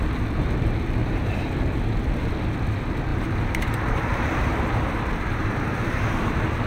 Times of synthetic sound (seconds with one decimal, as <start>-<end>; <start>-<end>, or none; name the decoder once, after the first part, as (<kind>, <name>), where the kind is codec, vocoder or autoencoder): 1.0-1.5 (vocoder, BigVGAN v2); 3.1-6.3